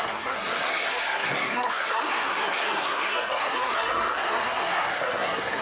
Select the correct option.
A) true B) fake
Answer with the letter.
B